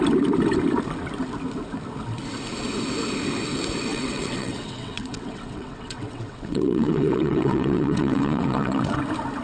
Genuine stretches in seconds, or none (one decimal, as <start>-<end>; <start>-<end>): 0.0-3.9; 9.0-9.4